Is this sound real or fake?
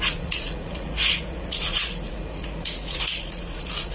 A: fake